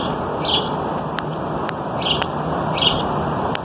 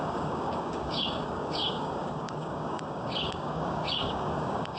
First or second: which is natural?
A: first